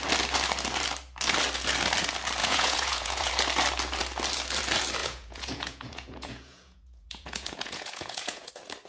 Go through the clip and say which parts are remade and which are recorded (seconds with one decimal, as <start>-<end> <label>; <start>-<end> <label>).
0.0-2.4 recorded; 2.4-3.3 remade; 3.3-5.0 recorded; 5.0-8.5 remade; 8.5-8.9 recorded

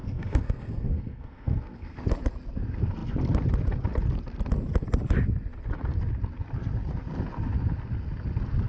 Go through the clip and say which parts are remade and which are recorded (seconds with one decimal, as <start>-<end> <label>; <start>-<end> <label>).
0.0-2.0 remade; 2.0-8.7 recorded

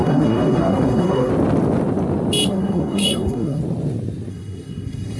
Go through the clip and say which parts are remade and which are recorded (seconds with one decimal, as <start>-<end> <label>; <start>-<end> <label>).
0.0-1.3 remade; 1.3-2.5 recorded; 2.5-3.6 remade; 3.6-4.3 recorded; 4.3-5.2 remade